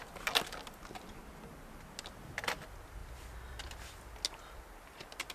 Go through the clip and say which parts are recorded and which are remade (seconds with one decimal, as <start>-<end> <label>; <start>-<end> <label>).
0.0-5.3 recorded